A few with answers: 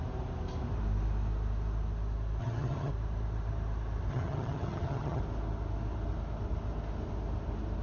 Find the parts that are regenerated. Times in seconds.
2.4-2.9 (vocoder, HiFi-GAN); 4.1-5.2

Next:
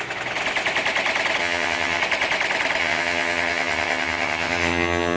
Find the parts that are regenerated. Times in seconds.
1.4-2.0 (vocoder, HiFi-GAN); 2.8-5.2